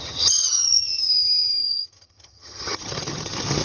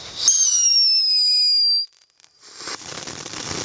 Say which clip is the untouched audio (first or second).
second